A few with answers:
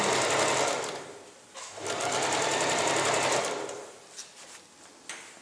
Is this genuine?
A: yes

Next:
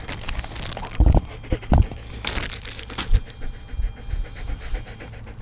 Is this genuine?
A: yes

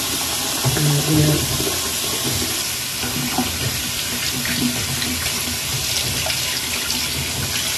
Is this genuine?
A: yes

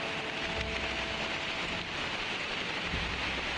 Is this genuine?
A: yes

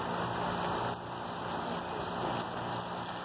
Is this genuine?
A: yes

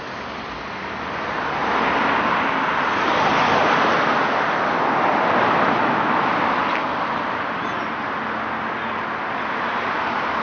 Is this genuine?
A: yes